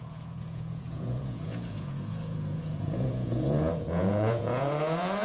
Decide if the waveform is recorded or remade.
remade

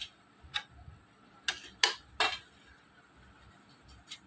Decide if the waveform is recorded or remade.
recorded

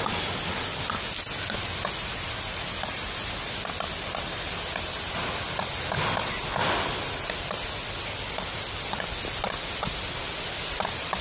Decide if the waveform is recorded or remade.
recorded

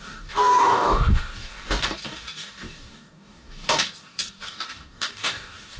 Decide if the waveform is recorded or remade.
remade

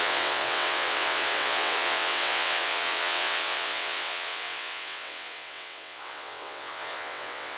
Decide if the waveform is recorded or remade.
remade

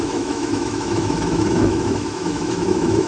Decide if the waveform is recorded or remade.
remade